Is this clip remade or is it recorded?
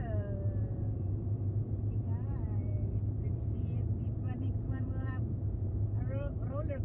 remade